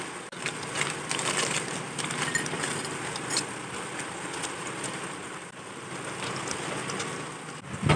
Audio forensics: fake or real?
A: real